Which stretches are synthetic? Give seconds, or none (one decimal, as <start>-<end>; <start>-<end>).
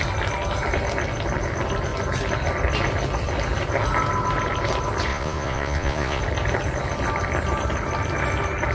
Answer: 5.1-6.2